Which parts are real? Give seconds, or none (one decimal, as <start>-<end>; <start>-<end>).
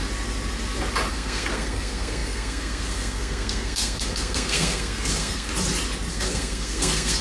0.0-1.1; 5.5-6.1